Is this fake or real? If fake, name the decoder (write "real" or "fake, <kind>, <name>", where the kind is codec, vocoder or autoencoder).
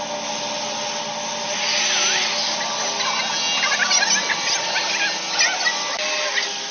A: real